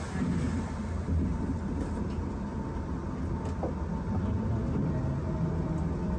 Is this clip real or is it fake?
real